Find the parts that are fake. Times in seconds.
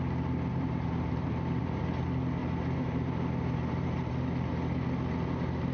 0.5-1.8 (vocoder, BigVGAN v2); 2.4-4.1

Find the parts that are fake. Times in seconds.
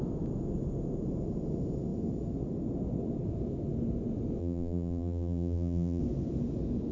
4.4-6.0 (vocoder, BigVGAN v2)